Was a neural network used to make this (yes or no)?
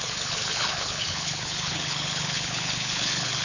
yes